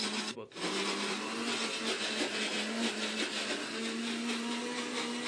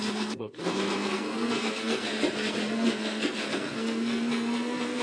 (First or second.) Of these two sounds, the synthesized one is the second